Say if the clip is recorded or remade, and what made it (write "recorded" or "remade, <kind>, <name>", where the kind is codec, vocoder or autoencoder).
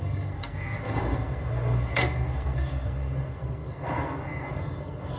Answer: remade, codec, SNAC